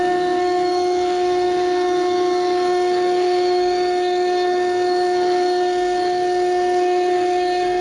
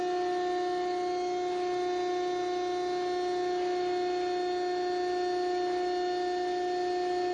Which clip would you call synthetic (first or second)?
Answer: first